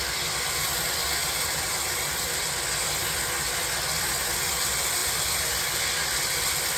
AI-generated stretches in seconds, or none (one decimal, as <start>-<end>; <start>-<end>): 1.2-2.4; 5.0-5.6

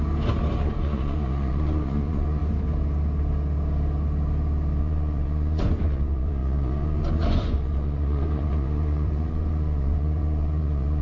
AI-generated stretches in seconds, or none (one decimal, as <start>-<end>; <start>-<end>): 0.6-2.4; 4.8-11.0

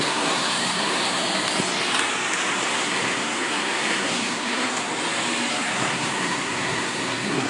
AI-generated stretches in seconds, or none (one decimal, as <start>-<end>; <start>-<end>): 0.0-1.2; 2.7-4.9; 5.5-7.5

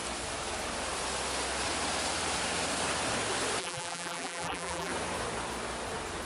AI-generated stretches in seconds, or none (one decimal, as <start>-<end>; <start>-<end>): 3.6-4.9

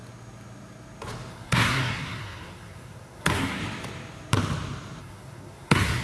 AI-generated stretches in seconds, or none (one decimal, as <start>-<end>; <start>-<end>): 1.3-3.6; 5.0-6.0

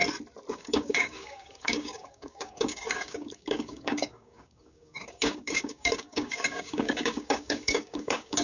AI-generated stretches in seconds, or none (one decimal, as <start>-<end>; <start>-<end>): 0.5-8.4

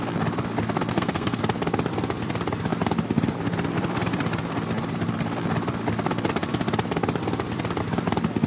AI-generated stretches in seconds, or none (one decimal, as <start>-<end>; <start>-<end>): 0.9-1.4